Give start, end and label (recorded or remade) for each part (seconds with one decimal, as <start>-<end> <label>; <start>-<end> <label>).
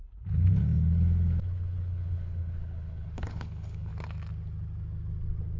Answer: 0.0-3.9 remade; 3.9-5.6 recorded